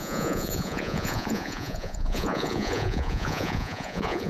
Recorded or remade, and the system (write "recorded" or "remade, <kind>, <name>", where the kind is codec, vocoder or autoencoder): remade, vocoder, Vocos